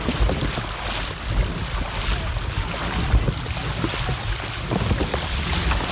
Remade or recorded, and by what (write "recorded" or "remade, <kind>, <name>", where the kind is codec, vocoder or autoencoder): recorded